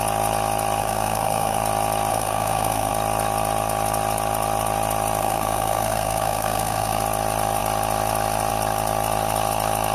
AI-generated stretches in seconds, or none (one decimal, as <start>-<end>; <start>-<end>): 0.8-1.6; 2.1-2.9; 5.2-7.0